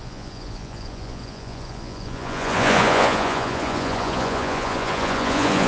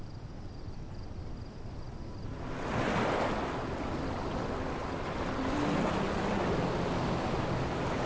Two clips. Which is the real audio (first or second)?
second